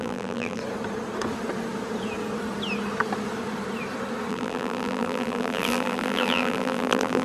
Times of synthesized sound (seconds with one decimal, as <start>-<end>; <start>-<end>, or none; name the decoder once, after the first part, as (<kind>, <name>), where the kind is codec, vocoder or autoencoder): 0.0-0.6 (vocoder, BigVGAN v2); 4.3-7.2